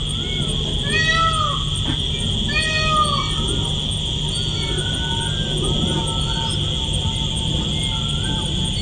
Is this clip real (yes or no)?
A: yes